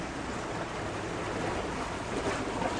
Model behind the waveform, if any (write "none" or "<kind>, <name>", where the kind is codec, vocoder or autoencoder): none